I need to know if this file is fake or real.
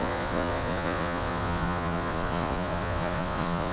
fake